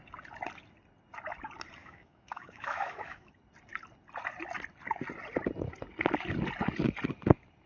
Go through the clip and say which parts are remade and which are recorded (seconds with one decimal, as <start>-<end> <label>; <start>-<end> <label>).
0.0-1.8 recorded; 1.8-3.3 remade; 3.3-7.7 recorded